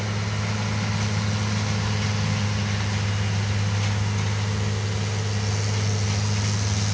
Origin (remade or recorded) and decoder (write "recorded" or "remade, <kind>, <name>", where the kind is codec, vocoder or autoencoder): recorded